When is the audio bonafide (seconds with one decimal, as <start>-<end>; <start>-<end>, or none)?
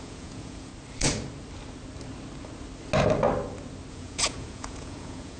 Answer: 0.7-3.9